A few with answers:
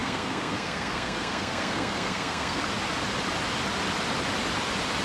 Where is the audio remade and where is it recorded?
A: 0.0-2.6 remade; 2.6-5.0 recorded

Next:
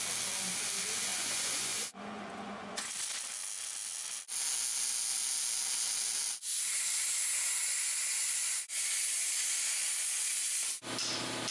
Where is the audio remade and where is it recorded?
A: 0.0-1.1 recorded; 1.1-2.9 remade; 2.9-11.5 recorded

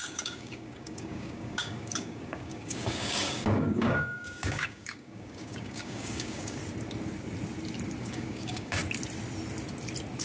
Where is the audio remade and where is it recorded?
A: 0.0-6.6 remade; 6.6-8.0 recorded; 8.0-8.8 remade; 8.8-10.2 recorded

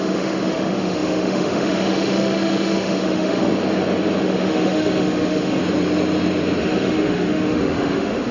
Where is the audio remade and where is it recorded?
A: 0.0-3.5 remade; 3.5-4.2 recorded; 4.2-5.6 remade; 5.6-6.6 recorded; 6.6-8.3 remade

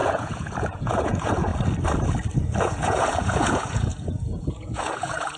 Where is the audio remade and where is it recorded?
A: 0.0-1.5 remade; 1.5-2.6 recorded; 2.6-5.4 remade

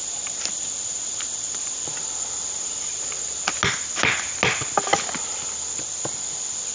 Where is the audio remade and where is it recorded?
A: 0.0-6.7 recorded

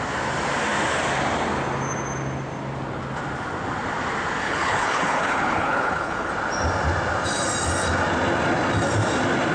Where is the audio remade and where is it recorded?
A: 0.0-4.4 recorded; 4.4-6.3 remade; 6.3-9.5 recorded